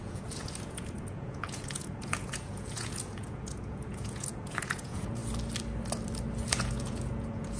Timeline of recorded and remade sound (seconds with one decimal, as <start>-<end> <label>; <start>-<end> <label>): 0.0-5.2 remade; 5.2-6.5 recorded; 6.5-7.6 remade